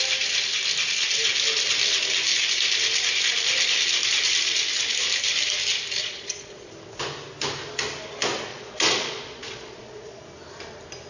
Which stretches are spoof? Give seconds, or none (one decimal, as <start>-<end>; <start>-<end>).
6.0-6.7; 8.5-10.2